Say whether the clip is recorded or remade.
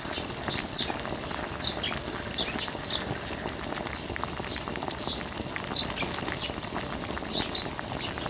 recorded